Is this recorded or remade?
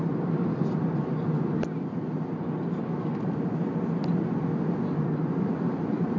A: recorded